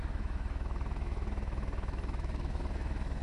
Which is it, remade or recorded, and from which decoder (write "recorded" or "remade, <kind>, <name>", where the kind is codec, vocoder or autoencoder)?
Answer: remade, autoencoder, DAC-VAE